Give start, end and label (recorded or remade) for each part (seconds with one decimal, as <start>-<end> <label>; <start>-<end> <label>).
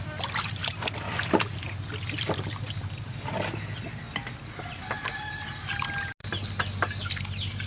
0.0-7.7 recorded